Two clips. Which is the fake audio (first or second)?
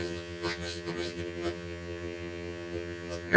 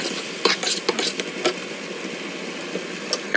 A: first